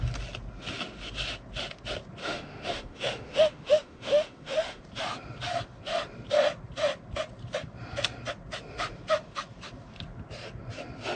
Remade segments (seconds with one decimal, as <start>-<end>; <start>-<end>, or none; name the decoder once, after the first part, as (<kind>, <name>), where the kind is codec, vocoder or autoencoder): 2.2-4.8 (autoencoder, DAC-VAE)